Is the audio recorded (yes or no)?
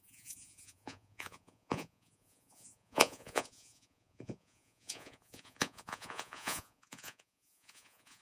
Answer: no